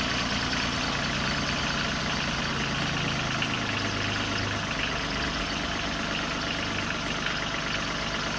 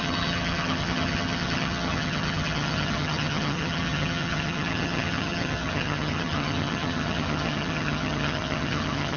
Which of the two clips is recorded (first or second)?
first